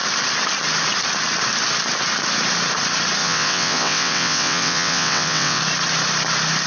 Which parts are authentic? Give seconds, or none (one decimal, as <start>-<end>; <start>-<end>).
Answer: 0.0-3.2; 5.6-6.7